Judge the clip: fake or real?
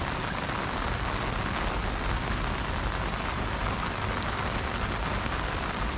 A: real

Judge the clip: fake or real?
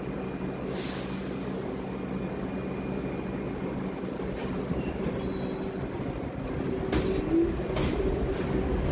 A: real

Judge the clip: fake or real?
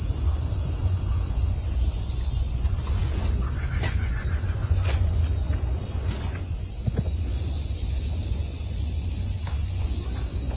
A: fake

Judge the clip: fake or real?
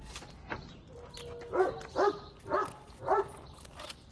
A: real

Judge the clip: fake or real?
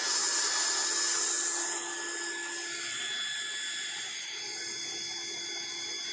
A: real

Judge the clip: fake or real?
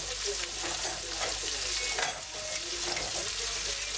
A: real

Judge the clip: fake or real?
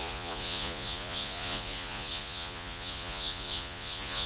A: fake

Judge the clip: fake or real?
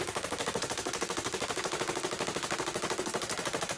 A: real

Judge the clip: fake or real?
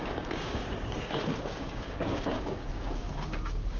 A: fake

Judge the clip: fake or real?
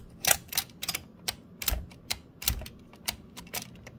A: real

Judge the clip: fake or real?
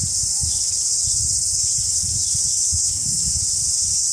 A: real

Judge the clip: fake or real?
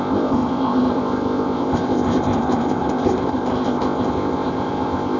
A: fake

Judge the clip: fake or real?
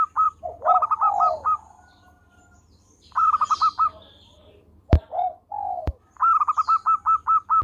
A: fake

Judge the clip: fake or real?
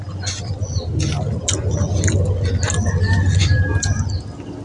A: real